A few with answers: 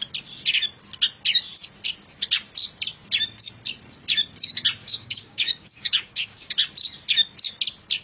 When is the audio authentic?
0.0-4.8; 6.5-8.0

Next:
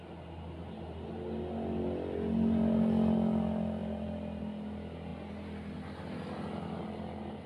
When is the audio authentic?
0.0-7.5

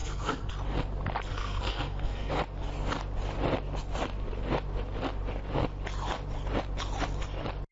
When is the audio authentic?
0.5-1.3; 2.3-7.7

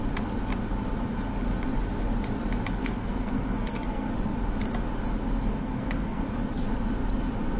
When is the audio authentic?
0.0-2.8; 4.1-5.6; 6.2-7.6